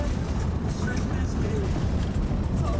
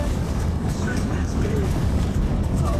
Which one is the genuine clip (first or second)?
first